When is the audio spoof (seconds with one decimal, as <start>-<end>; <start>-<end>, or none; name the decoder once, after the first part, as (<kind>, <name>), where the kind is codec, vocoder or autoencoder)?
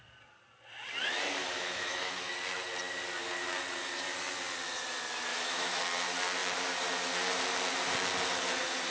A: 1.4-2.3 (autoencoder, DAC-VAE); 5.3-5.8